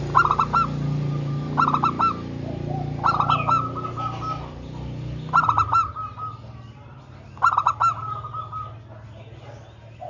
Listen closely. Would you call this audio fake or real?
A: real